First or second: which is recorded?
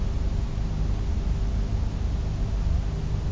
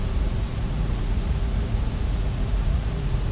first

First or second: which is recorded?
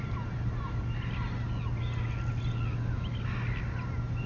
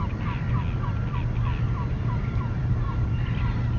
first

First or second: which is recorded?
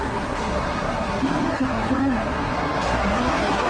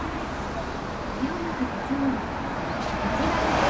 second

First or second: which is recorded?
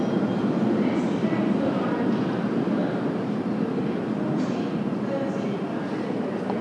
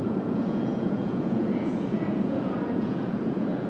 first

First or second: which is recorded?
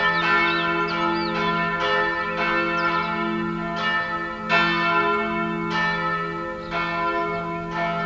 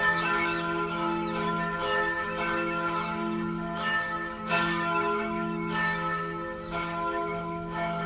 first